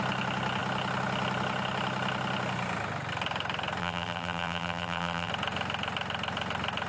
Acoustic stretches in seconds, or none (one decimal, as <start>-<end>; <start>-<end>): 0.0-3.8; 5.3-6.9